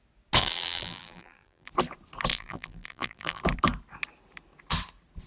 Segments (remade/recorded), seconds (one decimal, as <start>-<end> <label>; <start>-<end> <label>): 0.0-0.4 recorded; 0.4-1.7 remade; 1.7-2.3 recorded; 2.3-3.4 remade; 3.4-5.3 recorded

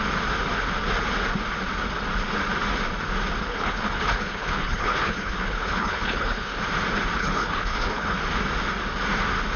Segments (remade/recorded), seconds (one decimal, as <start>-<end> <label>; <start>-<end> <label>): 0.0-3.5 recorded; 3.5-6.6 remade; 6.6-7.2 recorded; 7.2-8.2 remade; 8.2-9.6 recorded

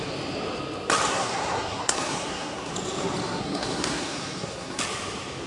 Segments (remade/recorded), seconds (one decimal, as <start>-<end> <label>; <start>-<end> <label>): 0.0-1.1 recorded; 1.1-2.7 remade; 2.7-3.4 recorded; 3.4-4.8 remade; 4.8-5.5 recorded

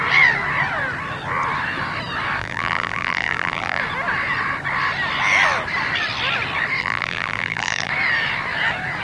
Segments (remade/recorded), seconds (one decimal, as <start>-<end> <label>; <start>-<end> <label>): 0.0-2.4 recorded; 2.4-3.8 remade; 3.8-6.8 recorded; 6.8-7.9 remade; 7.9-9.0 recorded

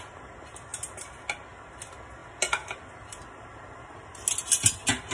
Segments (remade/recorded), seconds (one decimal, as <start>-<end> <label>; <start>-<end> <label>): 0.0-5.1 recorded

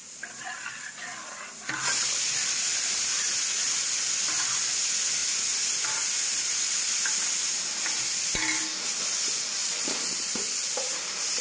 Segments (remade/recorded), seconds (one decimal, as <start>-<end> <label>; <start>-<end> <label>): 0.0-9.6 recorded; 9.6-11.4 remade

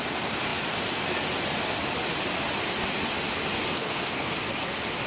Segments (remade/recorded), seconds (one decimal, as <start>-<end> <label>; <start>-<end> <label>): 0.0-3.6 recorded; 3.6-4.3 remade; 4.3-5.1 recorded